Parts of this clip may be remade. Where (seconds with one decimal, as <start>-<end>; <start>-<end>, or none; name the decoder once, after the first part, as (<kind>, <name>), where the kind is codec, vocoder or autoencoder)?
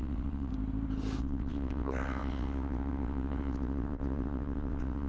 0.0-0.5 (vocoder, WaveNeXt); 1.2-5.1